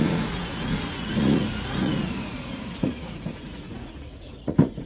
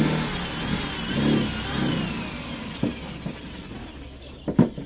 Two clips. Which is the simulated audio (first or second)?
first